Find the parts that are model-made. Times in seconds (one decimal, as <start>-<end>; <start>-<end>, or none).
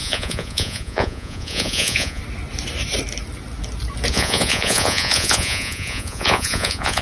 0.0-2.2; 4.1-7.0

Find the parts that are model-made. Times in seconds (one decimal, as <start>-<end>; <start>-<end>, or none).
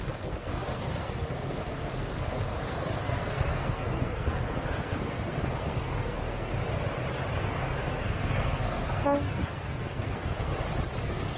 0.0-6.5; 7.4-10.5; 11.0-11.4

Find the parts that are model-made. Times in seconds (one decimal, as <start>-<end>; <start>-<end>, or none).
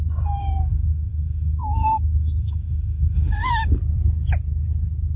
0.4-3.5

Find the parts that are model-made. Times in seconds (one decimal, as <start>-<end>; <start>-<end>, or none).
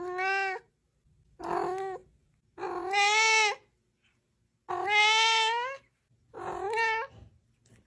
none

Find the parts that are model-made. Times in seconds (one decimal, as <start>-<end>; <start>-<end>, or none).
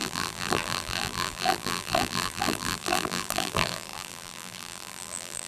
0.0-5.5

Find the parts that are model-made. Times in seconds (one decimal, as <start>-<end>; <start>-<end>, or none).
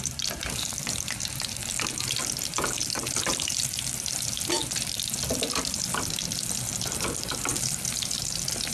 0.0-4.6; 5.5-8.7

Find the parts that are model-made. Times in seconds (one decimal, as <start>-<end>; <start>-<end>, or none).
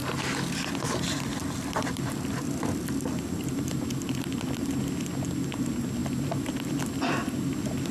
0.0-4.7; 6.0-7.5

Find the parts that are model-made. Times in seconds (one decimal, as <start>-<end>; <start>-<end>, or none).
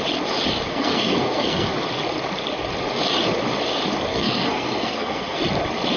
0.7-1.7; 4.1-5.4